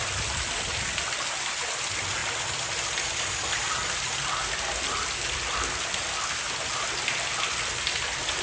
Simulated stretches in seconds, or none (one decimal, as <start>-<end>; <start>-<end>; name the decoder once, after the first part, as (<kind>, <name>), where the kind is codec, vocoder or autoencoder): none